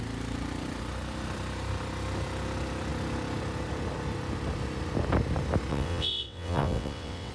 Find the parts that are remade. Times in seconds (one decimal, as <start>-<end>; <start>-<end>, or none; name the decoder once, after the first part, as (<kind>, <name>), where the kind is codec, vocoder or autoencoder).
5.7-7.3 (vocoder, WaveNeXt)